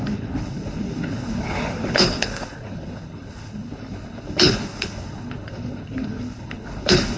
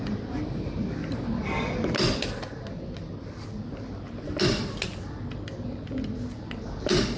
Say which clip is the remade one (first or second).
first